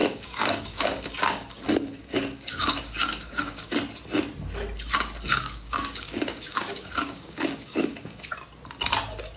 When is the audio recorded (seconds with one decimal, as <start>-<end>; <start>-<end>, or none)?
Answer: 3.7-5.3; 8.3-9.4